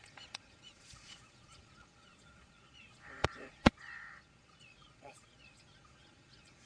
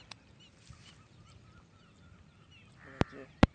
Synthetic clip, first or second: first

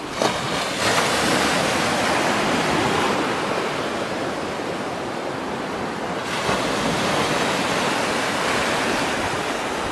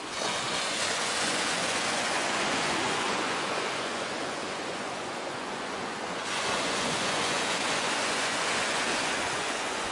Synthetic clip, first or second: second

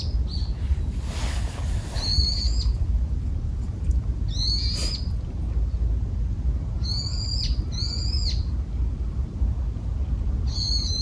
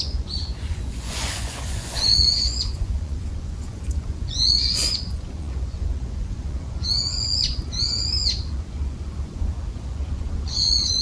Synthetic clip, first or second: second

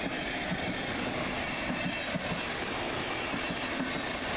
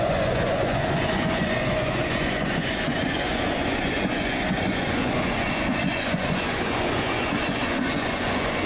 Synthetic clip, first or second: second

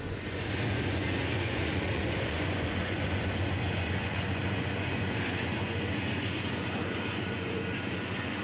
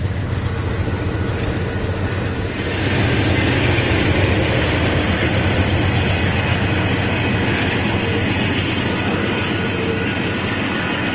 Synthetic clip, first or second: first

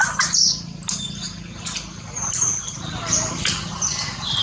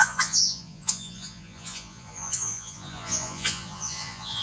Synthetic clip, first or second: second